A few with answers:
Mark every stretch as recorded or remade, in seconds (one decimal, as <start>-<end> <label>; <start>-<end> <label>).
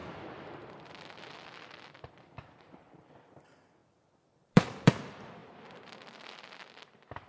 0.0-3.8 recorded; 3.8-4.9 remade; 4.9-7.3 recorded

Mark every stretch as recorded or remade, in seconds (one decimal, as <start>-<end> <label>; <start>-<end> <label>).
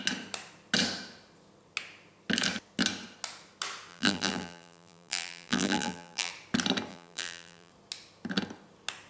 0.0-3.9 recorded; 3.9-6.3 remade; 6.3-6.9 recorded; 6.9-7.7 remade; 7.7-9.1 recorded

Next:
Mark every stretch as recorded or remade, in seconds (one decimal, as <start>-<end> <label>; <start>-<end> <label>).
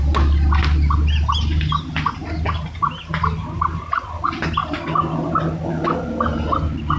0.0-2.2 recorded; 2.2-4.0 remade; 4.0-7.0 recorded